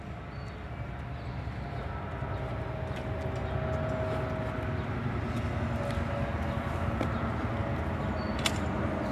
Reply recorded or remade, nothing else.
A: recorded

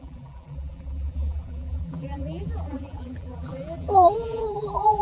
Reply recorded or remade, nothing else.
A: remade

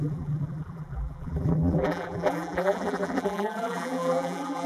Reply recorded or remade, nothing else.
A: remade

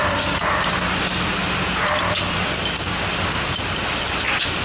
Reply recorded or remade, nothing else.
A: recorded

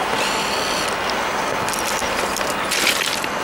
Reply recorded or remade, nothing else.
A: recorded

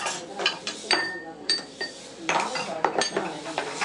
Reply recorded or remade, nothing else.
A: remade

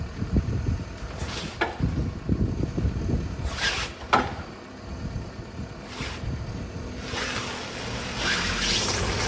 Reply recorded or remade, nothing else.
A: recorded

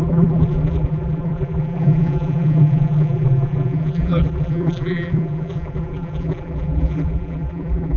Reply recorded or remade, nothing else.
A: remade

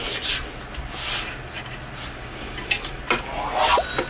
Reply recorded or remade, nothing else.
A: recorded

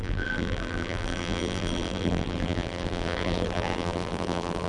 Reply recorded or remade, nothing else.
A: remade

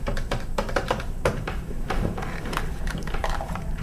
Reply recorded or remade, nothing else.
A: remade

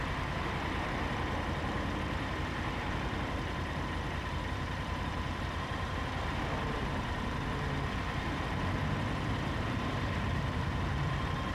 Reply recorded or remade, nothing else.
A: remade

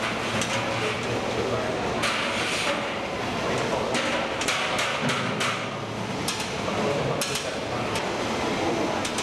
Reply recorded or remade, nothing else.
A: recorded